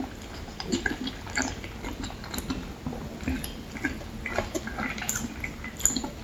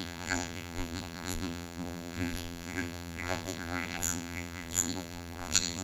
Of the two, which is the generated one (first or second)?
second